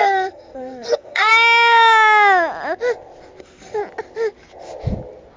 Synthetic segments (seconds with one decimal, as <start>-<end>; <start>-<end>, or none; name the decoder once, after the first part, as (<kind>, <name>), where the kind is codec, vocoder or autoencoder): 0.0-1.3 (codec, SNAC); 3.4-3.8